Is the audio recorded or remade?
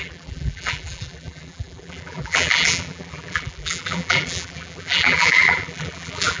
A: remade